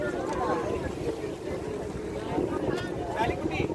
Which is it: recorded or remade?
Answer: recorded